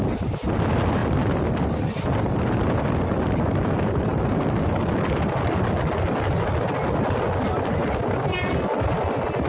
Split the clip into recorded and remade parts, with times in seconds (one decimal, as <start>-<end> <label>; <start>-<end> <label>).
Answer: 0.0-1.0 recorded; 1.0-1.9 remade; 1.9-7.8 recorded; 7.8-8.4 remade; 8.4-9.5 recorded